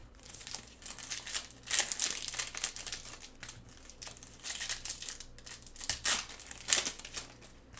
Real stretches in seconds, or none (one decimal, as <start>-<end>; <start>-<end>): 0.5-7.8